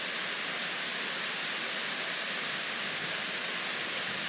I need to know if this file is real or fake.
real